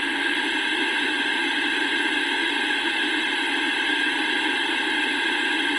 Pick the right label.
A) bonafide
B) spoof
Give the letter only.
A